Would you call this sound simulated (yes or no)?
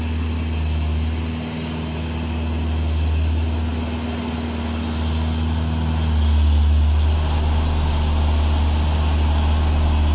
no